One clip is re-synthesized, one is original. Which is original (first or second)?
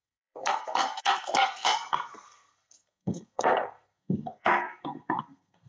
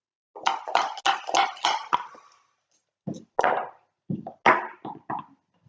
second